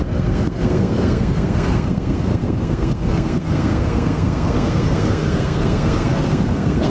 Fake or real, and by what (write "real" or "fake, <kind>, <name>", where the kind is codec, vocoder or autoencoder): fake, codec, SNAC